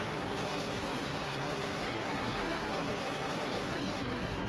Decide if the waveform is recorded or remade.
remade